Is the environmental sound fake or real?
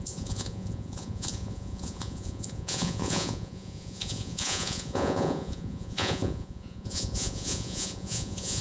fake